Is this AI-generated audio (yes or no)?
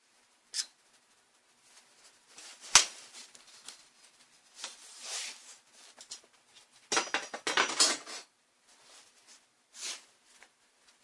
no